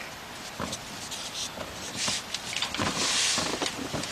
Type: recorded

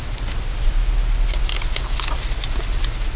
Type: recorded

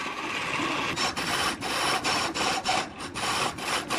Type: recorded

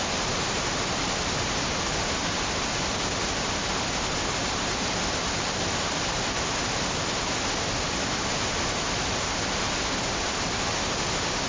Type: recorded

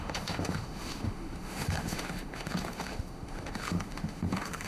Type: remade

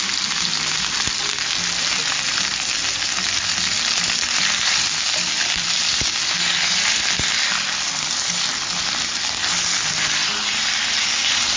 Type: recorded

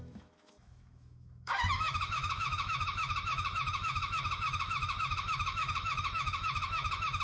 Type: remade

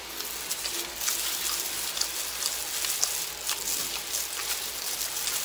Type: recorded